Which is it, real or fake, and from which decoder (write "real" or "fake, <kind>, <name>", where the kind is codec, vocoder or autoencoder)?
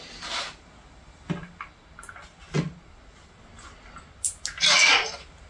real